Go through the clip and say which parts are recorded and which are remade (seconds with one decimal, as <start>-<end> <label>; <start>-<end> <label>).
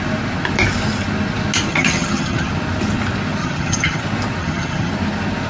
0.0-1.7 recorded; 1.7-2.5 remade; 2.5-3.4 recorded; 3.4-4.0 remade; 4.0-4.4 recorded; 4.4-4.9 remade; 4.9-5.5 recorded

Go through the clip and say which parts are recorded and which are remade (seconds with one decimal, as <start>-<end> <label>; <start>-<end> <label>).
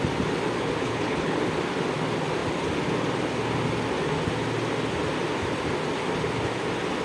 0.0-0.8 recorded; 0.8-1.4 remade; 1.4-7.0 recorded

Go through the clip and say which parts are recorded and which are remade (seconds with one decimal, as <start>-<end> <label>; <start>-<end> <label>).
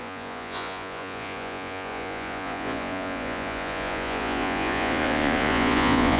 0.0-6.2 remade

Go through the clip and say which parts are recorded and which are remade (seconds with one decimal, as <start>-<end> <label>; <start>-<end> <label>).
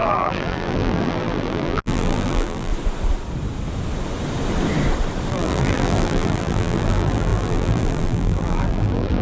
0.0-2.7 remade; 2.7-5.3 recorded; 5.3-9.2 remade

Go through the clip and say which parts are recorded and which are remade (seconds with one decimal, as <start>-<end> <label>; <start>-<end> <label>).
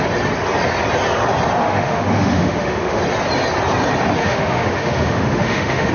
0.0-1.6 recorded; 1.6-3.0 remade; 3.0-4.2 recorded; 4.2-5.9 remade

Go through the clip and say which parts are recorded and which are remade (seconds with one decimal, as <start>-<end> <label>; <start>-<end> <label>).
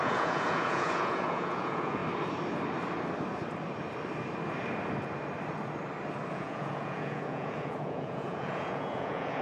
0.0-2.0 remade; 2.0-6.3 recorded; 6.3-9.4 remade